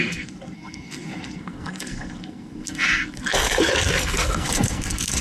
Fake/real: fake